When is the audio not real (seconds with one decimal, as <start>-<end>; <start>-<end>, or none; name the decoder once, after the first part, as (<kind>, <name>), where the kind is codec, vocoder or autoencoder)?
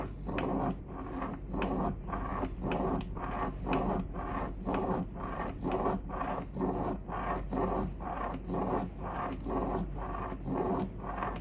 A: none